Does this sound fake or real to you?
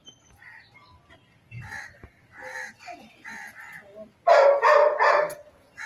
real